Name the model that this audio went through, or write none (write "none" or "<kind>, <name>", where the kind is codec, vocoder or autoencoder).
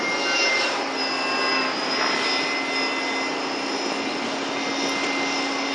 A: none